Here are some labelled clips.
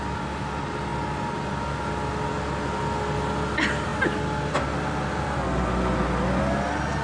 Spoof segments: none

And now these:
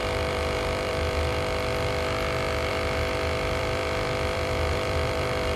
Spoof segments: 0.0-1.3 (vocoder, BigVGAN v2); 2.7-5.6

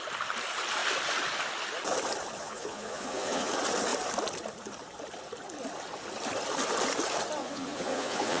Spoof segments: 2.4-3.5 (vocoder, Vocos); 7.4-8.4

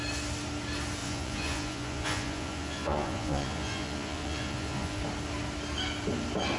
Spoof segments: 1.0-5.0 (vocoder, Vocos)

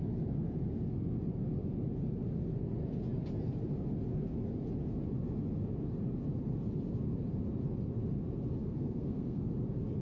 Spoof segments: 8.6-9.5 (codec, SNAC)